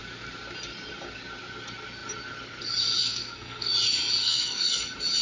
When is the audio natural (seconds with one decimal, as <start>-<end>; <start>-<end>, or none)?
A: 0.0-3.0; 3.7-4.2; 4.8-5.2